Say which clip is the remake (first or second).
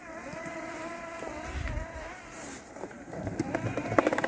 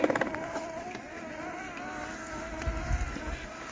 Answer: first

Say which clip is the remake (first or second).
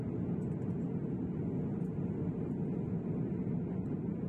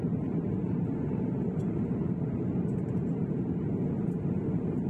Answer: second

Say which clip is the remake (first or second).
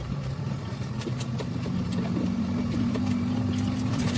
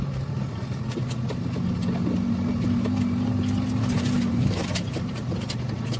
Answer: first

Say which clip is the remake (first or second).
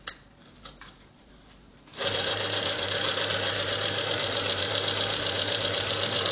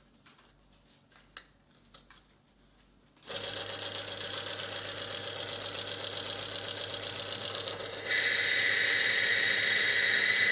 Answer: first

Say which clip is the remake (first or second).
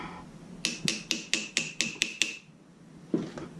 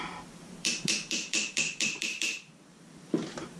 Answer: second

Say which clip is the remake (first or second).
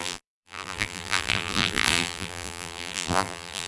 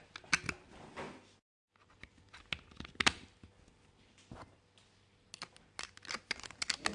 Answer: first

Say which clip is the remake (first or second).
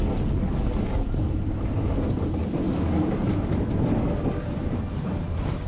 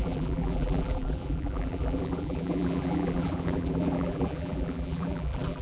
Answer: second